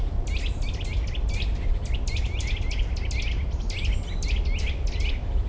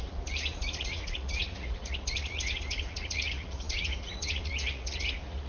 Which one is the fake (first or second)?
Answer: second